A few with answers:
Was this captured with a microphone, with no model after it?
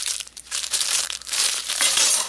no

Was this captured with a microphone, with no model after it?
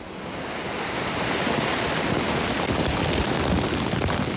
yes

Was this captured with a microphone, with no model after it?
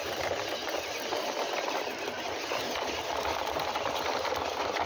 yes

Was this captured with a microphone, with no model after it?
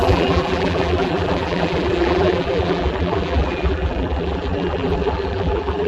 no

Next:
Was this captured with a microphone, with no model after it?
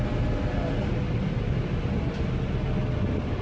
yes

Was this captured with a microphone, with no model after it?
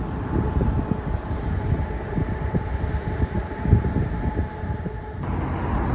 yes